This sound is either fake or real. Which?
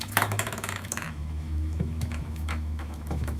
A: fake